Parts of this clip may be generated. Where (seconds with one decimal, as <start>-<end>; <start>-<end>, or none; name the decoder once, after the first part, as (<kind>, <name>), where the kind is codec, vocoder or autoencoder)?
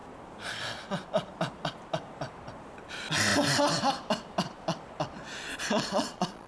5.5-6.5 (vocoder, Vocos)